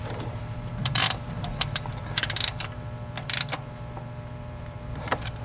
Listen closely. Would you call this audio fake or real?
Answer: fake